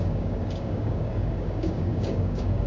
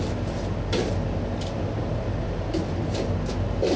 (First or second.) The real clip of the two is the second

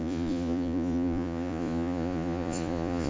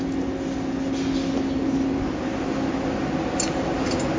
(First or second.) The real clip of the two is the second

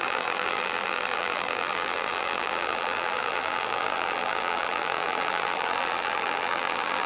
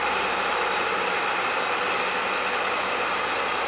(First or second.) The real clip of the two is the second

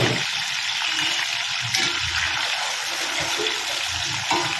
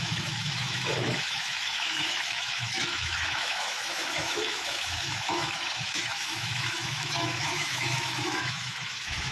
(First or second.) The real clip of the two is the first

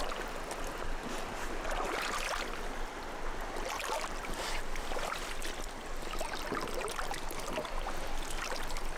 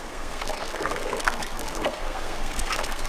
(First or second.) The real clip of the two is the first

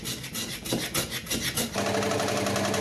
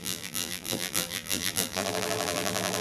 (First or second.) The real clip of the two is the first